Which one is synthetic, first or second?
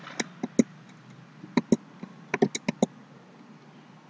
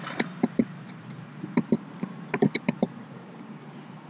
second